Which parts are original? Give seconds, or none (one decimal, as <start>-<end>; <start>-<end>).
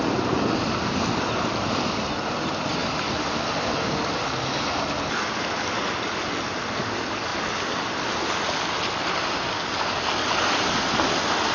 0.0-11.5